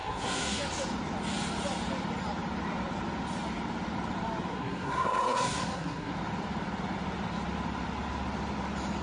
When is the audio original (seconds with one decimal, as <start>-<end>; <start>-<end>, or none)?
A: 0.6-4.5; 6.1-9.0